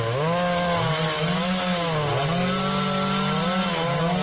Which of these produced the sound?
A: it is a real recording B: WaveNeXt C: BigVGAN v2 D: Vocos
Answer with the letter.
A